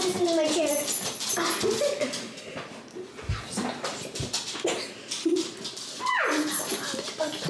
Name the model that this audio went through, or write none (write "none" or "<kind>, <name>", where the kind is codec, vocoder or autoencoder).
none